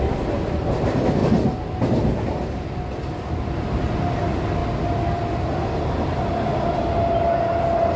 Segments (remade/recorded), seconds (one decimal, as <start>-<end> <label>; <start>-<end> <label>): 0.0-8.0 recorded